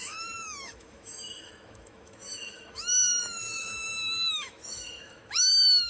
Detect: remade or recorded remade